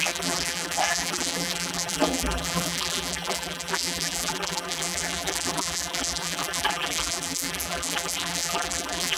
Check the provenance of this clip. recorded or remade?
remade